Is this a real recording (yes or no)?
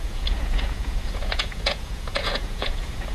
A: no